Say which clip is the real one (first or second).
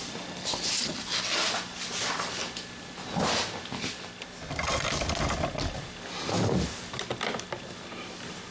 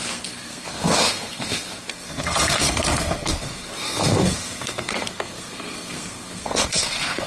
first